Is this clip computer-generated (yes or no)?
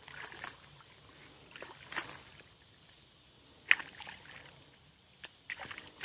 no